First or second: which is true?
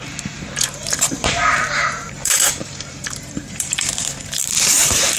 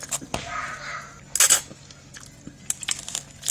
second